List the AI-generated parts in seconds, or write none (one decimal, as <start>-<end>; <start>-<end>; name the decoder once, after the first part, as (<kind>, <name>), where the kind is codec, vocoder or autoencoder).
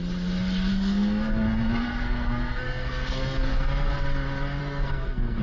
0.7-3.9 (codec, SNAC); 4.6-5.4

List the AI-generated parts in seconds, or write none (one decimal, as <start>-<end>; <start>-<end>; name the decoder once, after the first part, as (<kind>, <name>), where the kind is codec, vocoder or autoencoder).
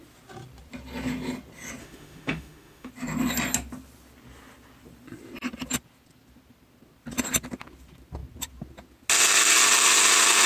1.8-2.9 (autoencoder, DAC-VAE)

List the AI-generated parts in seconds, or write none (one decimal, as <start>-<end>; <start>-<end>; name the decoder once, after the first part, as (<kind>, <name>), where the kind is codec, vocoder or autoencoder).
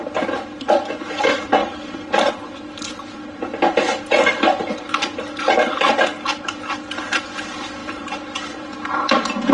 1.6-2.3 (vocoder, BigVGAN v2); 3.2-4.8; 7.8-8.9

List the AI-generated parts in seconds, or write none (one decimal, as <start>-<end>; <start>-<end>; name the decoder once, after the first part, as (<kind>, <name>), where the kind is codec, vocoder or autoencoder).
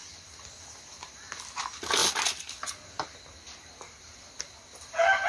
none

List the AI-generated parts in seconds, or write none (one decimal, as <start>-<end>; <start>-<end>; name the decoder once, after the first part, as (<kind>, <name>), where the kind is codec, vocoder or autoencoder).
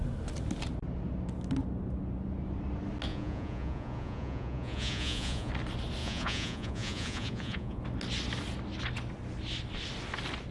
3.1-5.5 (vocoder, Vocos); 6.0-7.8